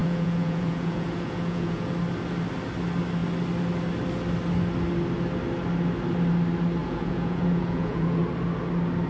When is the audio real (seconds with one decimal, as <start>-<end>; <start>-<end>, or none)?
1.9-6.8; 8.2-9.1